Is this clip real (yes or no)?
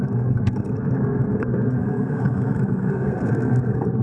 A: no